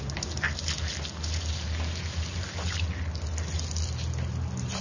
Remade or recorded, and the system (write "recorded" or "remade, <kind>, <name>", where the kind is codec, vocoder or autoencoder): recorded